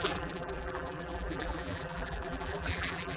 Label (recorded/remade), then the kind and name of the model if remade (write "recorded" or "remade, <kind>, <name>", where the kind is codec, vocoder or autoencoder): remade, vocoder, BigVGAN v2